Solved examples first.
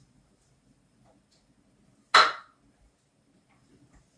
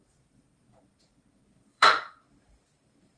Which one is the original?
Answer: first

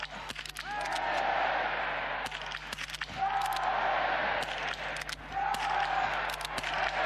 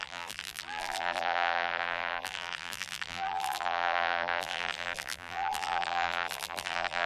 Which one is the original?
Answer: first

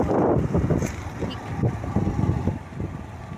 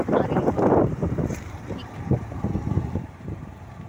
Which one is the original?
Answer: first